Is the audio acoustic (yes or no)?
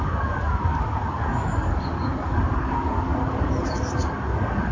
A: no